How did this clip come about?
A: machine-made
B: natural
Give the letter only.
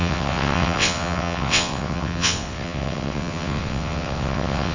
A